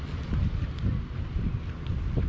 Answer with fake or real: real